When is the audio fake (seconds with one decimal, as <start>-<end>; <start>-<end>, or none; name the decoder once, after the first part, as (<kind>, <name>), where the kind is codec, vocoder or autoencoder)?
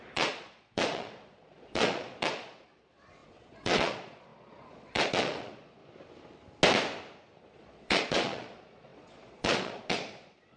0.0-5.8 (vocoder, Vocos); 7.4-10.6